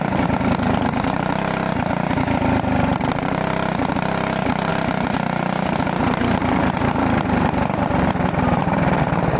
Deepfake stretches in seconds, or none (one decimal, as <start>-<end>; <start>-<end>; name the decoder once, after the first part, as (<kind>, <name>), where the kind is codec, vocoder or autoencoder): none